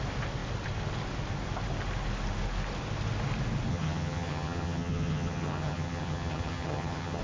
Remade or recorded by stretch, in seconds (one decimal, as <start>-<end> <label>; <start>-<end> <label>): 0.0-3.7 recorded; 3.7-7.2 remade